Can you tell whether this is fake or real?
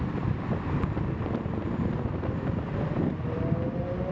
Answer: real